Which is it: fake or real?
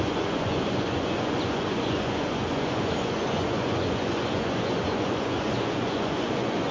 fake